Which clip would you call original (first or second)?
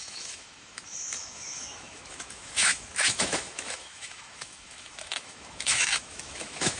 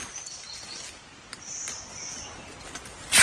second